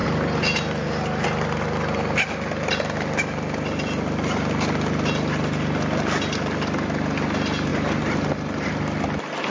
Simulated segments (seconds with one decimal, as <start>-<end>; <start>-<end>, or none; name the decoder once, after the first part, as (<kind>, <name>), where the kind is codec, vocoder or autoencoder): 0.0-1.2 (vocoder, BigVGAN v2)